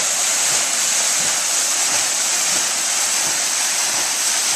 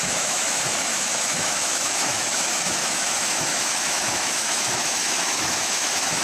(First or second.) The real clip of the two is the first